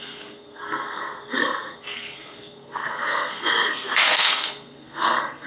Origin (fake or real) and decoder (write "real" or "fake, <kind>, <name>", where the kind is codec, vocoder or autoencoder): fake, codec, SNAC